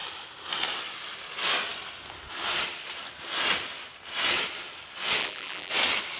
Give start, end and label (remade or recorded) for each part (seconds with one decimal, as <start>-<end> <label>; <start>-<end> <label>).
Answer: 0.0-5.2 recorded; 5.2-5.7 remade; 5.7-6.2 recorded